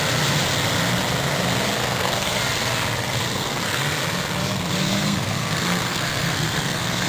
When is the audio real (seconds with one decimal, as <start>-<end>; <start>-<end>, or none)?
0.0-1.8; 2.4-3.3; 3.8-4.8